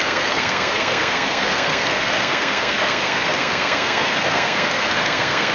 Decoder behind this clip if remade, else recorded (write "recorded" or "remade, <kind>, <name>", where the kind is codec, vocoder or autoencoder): remade, codec, SNAC